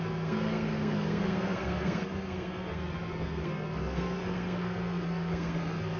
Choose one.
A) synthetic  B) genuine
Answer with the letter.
A